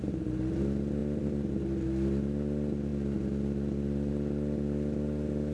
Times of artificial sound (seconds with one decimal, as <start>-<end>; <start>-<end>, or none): none